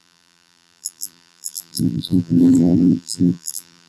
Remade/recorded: remade